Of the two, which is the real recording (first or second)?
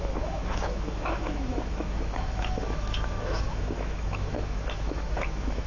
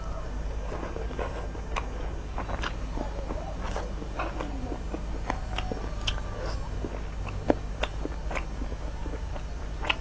second